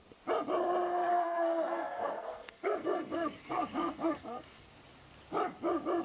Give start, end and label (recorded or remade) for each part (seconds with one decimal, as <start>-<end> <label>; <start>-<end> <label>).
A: 0.0-1.1 recorded; 1.1-4.7 remade; 4.7-6.0 recorded